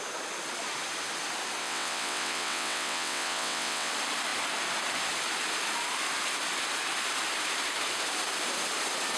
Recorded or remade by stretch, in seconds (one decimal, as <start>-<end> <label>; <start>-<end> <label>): 0.0-1.6 recorded; 1.6-3.9 remade; 3.9-9.2 recorded